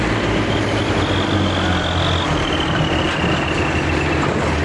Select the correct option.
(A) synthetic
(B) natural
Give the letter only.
B